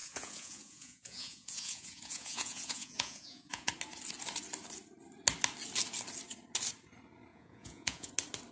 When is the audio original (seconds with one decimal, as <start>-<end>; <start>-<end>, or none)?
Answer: 3.7-7.3; 8.1-8.5